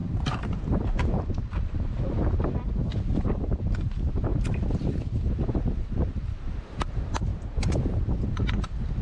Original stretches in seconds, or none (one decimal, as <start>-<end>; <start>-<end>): none